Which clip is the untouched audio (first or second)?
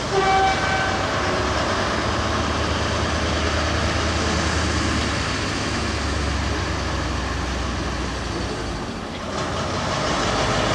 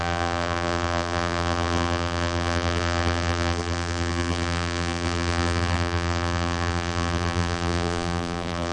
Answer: first